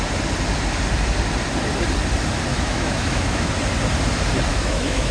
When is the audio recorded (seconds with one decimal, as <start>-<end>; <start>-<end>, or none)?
0.0-2.5; 3.5-4.5